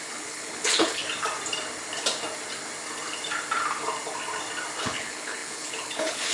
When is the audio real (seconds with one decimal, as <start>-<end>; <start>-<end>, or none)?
1.0-4.8